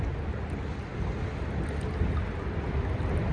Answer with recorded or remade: recorded